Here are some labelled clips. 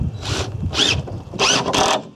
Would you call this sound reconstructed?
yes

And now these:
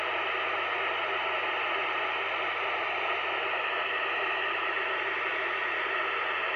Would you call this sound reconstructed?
no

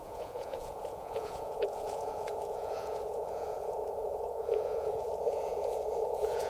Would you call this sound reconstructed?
yes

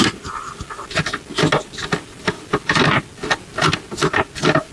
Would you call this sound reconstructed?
no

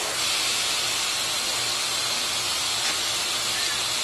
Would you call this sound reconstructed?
no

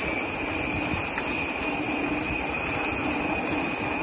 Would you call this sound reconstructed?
no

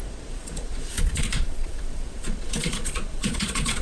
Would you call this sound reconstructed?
yes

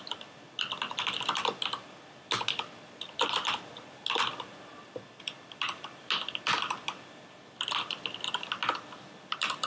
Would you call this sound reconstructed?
no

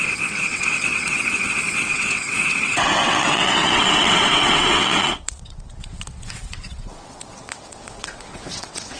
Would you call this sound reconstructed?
yes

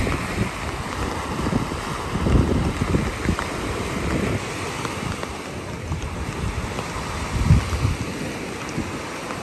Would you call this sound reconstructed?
no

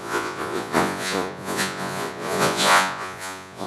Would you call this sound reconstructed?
yes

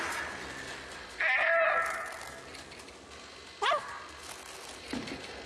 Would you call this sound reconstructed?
no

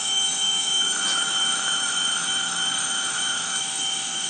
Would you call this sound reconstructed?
yes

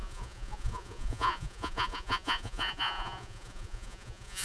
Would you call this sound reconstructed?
yes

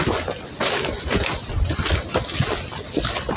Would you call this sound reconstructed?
no